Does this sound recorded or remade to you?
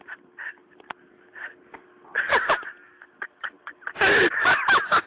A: recorded